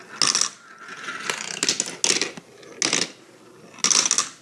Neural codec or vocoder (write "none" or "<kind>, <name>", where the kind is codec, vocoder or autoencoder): none